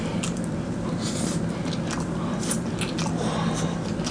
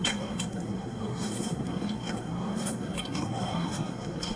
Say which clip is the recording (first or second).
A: first